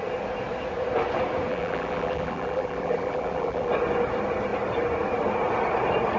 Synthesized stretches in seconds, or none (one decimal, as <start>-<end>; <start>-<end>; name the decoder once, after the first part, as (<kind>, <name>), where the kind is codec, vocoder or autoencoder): 1.5-3.7 (vocoder, BigVGAN v2)